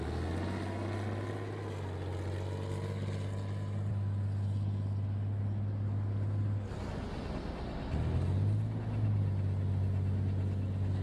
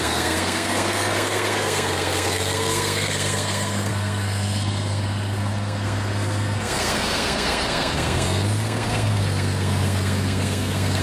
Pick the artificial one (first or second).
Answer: second